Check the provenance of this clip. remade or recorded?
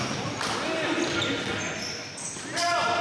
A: recorded